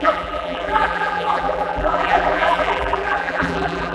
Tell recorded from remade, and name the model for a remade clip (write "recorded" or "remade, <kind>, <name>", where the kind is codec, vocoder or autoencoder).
remade, vocoder, BigVGAN v2